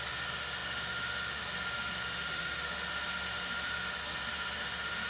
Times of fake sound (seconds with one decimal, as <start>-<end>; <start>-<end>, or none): none